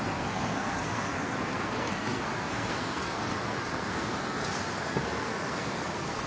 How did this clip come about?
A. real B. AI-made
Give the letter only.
B